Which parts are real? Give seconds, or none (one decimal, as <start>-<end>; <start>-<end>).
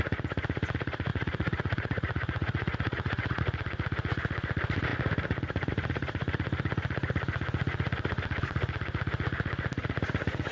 0.0-1.1; 3.4-10.5